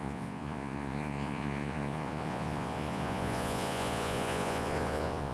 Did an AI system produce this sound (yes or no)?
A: yes